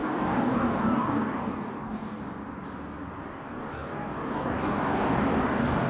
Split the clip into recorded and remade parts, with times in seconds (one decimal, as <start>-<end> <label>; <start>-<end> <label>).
0.0-2.2 remade; 2.2-3.3 recorded; 3.3-5.9 remade